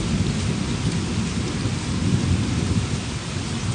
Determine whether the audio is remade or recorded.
recorded